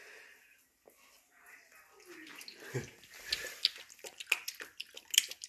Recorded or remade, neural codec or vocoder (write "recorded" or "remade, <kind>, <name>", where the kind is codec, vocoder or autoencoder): recorded